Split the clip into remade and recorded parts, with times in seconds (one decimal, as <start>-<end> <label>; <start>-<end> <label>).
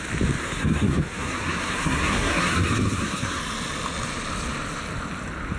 0.0-0.4 recorded; 0.4-3.4 remade; 3.4-5.6 recorded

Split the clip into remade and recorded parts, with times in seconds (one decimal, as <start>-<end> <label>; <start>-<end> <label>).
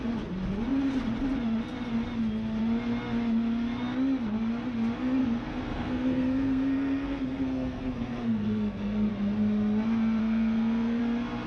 0.0-5.2 recorded; 5.2-9.1 remade; 9.1-10.2 recorded; 10.2-11.0 remade; 11.0-11.5 recorded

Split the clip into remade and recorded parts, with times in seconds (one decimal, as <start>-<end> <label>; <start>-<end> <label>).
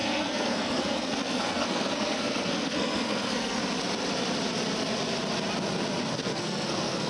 0.0-3.6 remade; 3.6-6.1 recorded; 6.1-7.1 remade